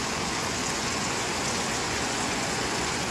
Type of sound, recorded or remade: remade